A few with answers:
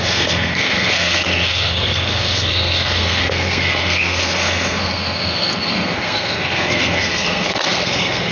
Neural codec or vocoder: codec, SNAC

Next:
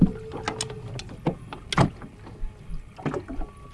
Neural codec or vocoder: none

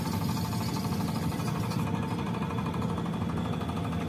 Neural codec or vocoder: none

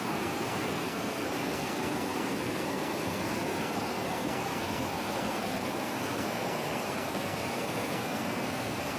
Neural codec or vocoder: codec, SNAC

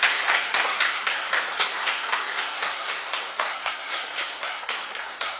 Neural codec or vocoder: codec, SNAC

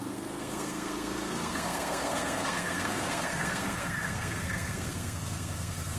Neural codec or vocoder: codec, SNAC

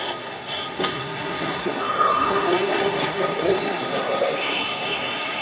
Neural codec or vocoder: codec, SNAC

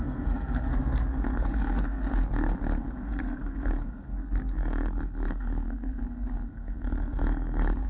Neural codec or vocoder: codec, SNAC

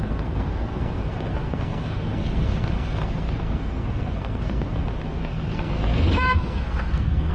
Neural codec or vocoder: codec, SNAC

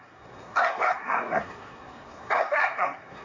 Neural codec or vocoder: codec, SNAC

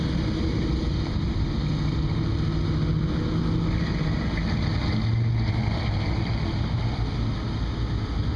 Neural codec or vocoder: none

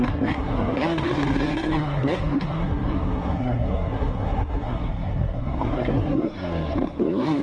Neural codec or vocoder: codec, SNAC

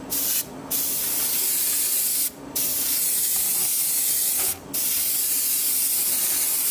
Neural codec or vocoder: none